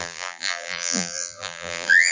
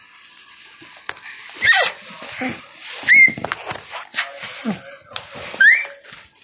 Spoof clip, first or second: first